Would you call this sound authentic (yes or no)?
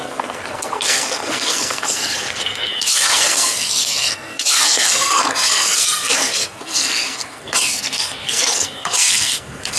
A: no